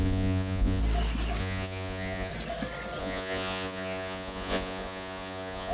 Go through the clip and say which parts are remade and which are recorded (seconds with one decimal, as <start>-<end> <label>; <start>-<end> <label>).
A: 0.0-0.8 remade; 0.8-1.4 recorded; 1.4-2.3 remade; 2.3-3.0 recorded; 3.0-5.7 remade